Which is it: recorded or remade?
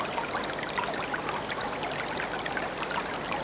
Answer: recorded